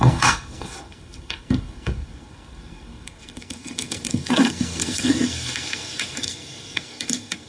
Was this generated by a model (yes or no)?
yes